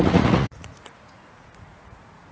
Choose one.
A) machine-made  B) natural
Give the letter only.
A